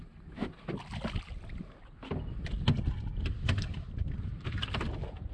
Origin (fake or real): real